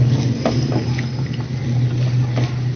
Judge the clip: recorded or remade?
recorded